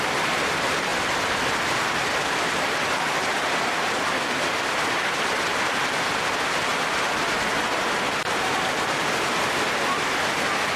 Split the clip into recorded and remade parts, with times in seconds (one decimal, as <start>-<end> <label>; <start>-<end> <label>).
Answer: 0.0-10.8 recorded